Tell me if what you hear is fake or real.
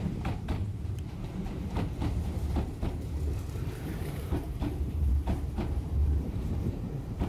fake